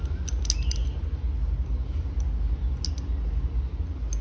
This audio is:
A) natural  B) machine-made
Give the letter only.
A